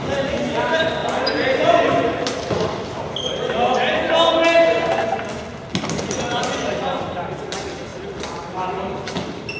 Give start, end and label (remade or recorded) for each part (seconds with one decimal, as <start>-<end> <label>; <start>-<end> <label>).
0.0-9.6 recorded